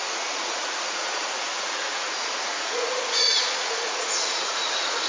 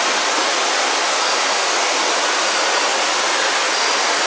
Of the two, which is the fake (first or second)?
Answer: first